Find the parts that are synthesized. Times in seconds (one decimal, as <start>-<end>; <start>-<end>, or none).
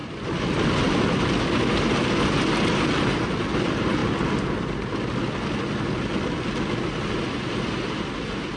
0.0-4.0; 7.2-8.6